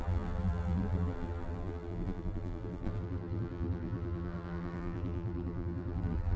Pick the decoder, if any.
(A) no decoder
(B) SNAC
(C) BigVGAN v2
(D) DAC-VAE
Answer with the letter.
C